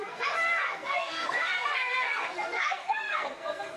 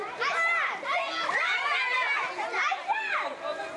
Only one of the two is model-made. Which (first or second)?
first